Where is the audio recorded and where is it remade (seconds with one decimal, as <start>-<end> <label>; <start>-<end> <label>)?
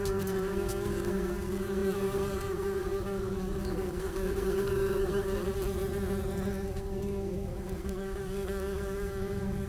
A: 0.0-5.4 remade; 5.4-6.5 recorded; 6.5-9.7 remade